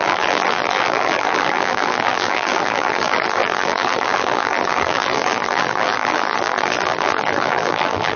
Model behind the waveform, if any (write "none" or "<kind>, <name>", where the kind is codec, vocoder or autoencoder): vocoder, BigVGAN v2